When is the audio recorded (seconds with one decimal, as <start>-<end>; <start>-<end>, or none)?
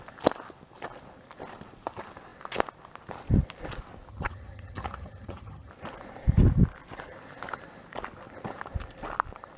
0.0-4.1; 5.7-9.6